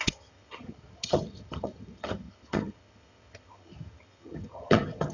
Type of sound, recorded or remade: remade